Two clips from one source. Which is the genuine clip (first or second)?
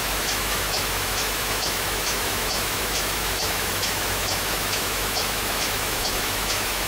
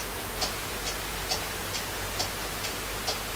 second